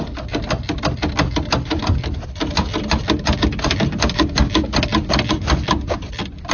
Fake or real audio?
real